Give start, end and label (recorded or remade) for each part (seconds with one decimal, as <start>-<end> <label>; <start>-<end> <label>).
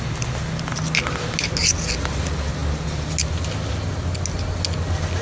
0.0-5.2 recorded